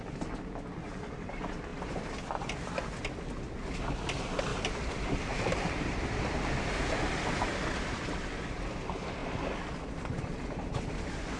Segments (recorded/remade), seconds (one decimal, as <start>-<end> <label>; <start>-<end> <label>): 0.0-4.5 recorded; 4.5-6.5 remade; 6.5-11.4 recorded